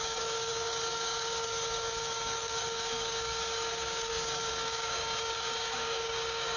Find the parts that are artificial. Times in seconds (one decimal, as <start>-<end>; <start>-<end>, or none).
0.0-6.6